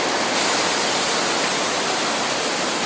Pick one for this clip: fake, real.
real